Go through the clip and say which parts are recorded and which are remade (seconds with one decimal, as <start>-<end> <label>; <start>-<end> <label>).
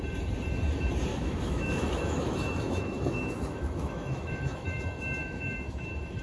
0.0-1.1 recorded; 1.1-4.8 remade; 4.8-5.2 recorded; 5.2-6.2 remade